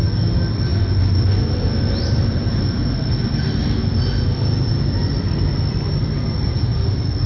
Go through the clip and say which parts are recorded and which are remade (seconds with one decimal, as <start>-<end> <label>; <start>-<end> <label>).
0.0-7.3 recorded